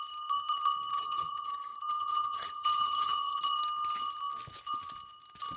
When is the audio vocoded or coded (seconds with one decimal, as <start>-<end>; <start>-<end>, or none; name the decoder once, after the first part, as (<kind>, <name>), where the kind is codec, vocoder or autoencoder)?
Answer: 0.9-3.4 (vocoder, HiFi-GAN)

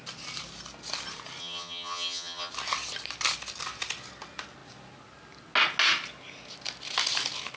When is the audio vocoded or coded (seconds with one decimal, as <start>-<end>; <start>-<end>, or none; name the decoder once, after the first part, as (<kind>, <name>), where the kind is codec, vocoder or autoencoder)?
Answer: 1.4-2.5 (vocoder, HiFi-GAN)

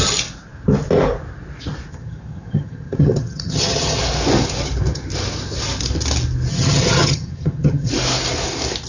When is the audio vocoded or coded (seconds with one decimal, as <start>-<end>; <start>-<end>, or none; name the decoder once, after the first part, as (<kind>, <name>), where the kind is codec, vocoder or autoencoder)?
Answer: 1.9-4.0 (vocoder, HiFi-GAN); 6.5-7.9

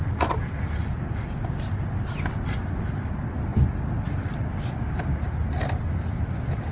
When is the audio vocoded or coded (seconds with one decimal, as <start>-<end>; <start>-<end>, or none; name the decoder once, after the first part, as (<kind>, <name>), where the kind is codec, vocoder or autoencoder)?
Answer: none

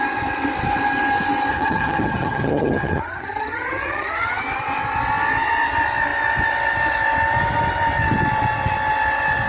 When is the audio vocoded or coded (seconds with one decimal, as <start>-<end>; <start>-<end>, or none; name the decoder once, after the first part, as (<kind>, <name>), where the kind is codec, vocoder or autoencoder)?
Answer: 1.5-4.4 (vocoder, HiFi-GAN)

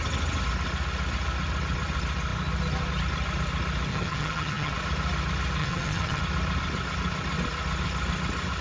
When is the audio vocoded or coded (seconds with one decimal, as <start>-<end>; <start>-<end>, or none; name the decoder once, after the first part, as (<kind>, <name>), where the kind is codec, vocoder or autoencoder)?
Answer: 3.9-4.7 (vocoder, HiFi-GAN); 5.6-6.2